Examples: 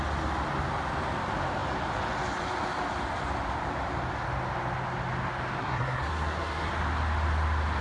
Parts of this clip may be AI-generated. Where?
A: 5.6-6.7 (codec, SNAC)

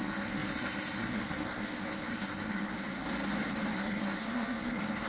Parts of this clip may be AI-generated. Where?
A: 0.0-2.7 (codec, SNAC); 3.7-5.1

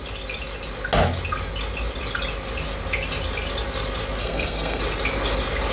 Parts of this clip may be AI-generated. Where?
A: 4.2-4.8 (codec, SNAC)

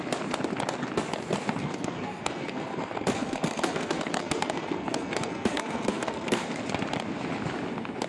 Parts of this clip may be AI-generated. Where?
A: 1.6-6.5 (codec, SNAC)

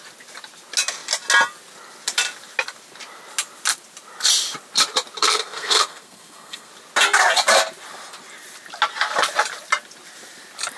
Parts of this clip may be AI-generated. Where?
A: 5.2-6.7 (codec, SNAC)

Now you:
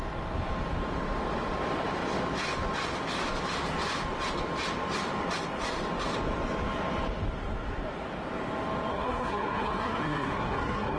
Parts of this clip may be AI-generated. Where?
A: 8.9-11.0 (codec, SNAC)

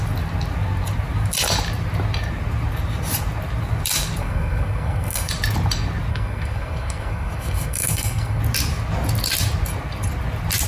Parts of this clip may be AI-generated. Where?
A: 4.2-5.3 (codec, SNAC); 6.1-8.4

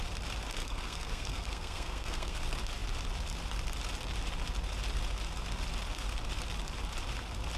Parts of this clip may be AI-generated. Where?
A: 0.6-2.4 (codec, SNAC)